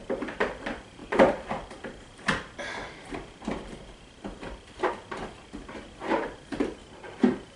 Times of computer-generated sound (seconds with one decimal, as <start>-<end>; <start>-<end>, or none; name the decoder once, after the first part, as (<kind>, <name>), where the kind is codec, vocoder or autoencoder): 1.0-4.9 (vocoder, BigVGAN v2); 6.8-7.6